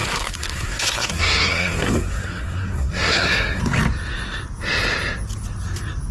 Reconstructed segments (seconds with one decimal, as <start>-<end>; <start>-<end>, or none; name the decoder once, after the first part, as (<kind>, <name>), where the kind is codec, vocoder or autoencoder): 0.0-3.6 (codec, SNAC)